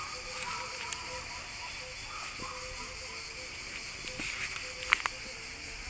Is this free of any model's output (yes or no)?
yes